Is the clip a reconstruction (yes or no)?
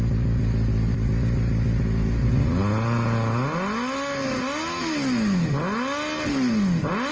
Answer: no